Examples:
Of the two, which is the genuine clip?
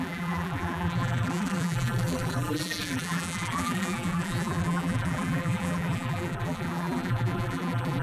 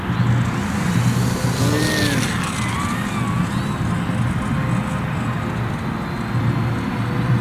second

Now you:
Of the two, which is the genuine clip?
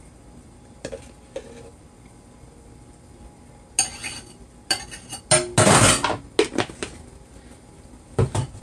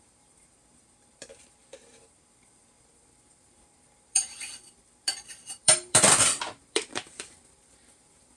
first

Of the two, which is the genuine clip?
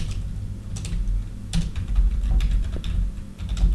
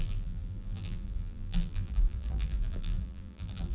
first